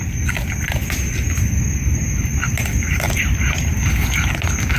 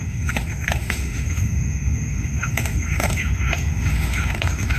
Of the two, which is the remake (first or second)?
second